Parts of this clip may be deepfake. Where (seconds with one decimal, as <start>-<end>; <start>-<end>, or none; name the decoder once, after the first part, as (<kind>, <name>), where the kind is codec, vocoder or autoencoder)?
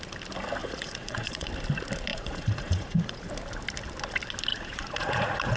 0.6-1.5 (vocoder, Vocos); 2.1-3.3; 4.5-5.6